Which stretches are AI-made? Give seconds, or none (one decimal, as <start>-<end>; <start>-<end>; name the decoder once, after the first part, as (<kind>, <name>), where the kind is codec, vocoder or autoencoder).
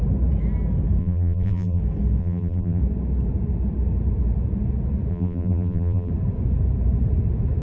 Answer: 1.0-1.8 (vocoder, BigVGAN v2); 2.2-2.8; 5.1-6.1